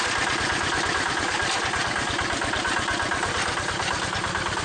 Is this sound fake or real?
real